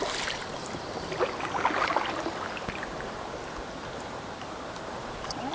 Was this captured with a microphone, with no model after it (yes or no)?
yes